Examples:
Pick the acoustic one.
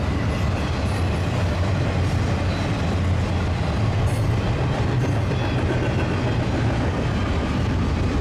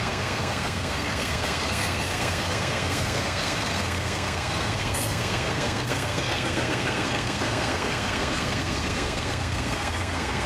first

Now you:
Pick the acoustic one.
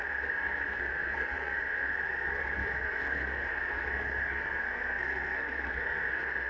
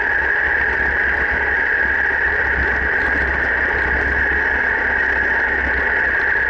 second